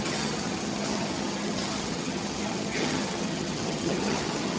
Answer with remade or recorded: remade